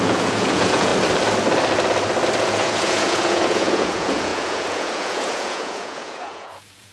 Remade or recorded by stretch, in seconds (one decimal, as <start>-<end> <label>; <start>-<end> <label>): 0.0-0.9 remade; 0.9-2.4 recorded; 2.4-6.9 remade